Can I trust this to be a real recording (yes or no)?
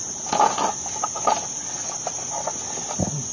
yes